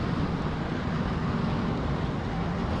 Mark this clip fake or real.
real